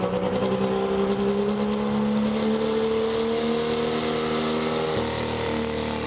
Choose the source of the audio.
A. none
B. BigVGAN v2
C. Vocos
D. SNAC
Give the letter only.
A